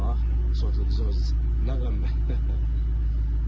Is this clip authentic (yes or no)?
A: yes